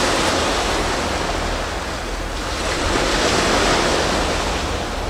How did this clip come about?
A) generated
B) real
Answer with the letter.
B